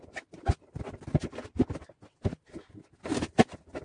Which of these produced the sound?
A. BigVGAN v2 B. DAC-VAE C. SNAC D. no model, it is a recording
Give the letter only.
D